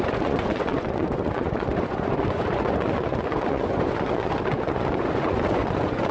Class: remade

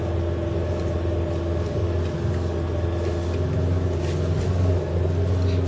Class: recorded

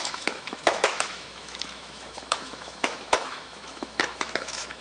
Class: remade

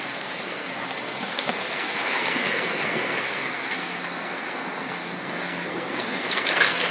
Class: remade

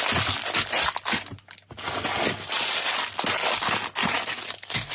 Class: recorded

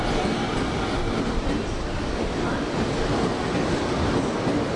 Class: recorded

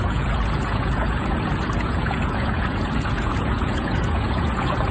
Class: remade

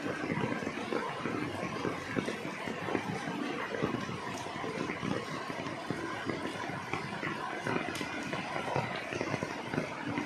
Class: recorded